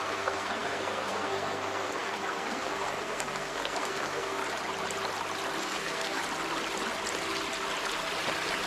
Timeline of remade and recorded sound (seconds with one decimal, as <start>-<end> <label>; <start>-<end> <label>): 0.0-4.4 remade; 4.4-5.6 recorded; 5.6-6.2 remade; 6.2-8.7 recorded